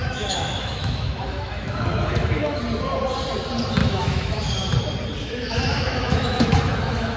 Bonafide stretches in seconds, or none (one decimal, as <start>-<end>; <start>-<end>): 2.6-3.8; 4.5-5.2